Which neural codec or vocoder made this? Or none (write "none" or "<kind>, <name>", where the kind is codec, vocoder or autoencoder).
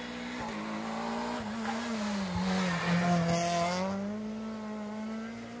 none